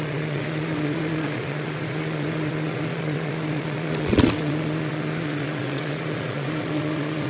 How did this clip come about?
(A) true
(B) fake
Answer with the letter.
B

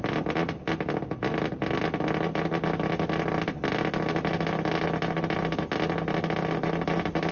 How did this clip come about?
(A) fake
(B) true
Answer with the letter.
B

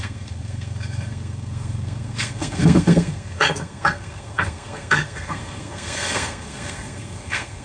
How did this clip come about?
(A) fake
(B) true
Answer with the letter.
A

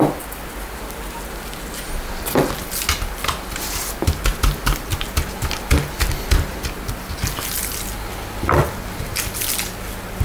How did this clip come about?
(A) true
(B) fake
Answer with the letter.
A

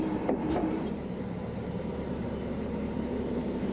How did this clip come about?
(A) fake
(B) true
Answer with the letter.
A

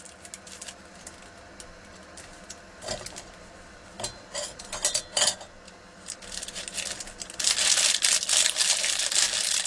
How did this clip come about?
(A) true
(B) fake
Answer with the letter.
A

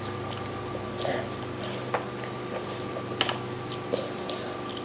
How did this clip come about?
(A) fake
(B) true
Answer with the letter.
B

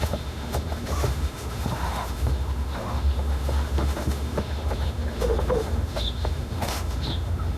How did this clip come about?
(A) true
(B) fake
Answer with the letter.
B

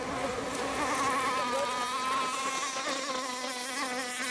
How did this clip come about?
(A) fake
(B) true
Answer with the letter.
B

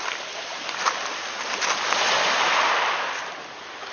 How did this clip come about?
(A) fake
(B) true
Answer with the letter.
B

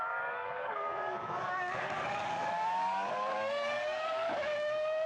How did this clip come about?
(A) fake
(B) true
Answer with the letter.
A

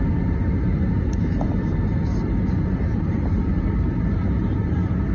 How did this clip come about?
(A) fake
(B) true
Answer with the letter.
A